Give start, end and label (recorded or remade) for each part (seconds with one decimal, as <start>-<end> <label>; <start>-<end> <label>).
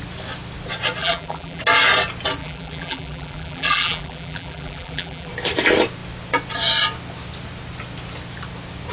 0.0-1.0 recorded; 1.0-1.6 remade; 1.6-2.4 recorded; 2.4-5.3 remade; 5.3-8.9 recorded